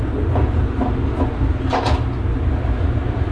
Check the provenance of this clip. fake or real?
real